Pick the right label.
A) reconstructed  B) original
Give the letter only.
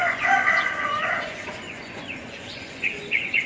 A